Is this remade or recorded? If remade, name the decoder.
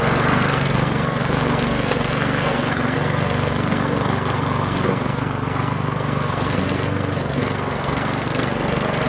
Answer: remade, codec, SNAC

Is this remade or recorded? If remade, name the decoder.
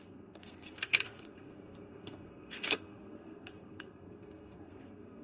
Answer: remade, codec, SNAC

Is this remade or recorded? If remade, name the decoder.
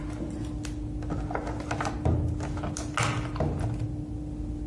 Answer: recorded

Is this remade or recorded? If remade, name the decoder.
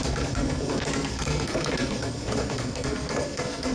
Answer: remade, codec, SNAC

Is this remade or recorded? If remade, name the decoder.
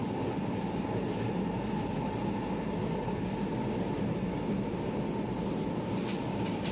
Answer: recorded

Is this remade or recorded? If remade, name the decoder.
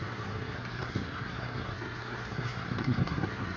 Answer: remade, codec, SNAC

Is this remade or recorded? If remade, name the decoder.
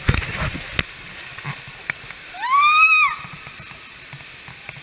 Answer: recorded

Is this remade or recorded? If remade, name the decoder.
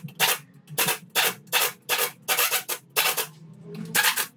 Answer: recorded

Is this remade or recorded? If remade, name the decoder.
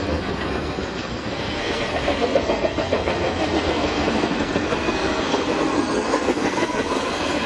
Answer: remade, codec, SNAC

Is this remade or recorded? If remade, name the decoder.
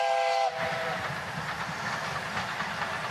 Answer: recorded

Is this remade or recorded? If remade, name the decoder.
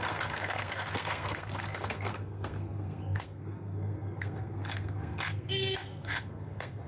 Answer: remade, codec, SNAC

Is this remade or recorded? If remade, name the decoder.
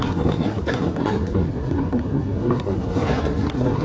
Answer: remade, codec, SNAC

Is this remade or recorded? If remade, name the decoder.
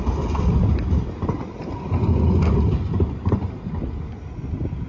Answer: recorded